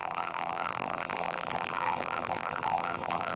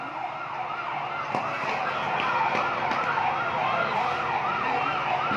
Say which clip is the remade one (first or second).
first